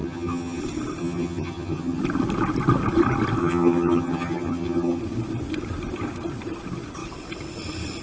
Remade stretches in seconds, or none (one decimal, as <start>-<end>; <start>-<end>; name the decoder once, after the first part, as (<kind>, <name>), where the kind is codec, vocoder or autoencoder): 0.0-0.6 (vocoder, HiFi-GAN); 1.0-2.0; 3.4-5.0